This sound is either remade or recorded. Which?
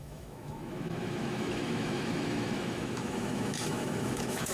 remade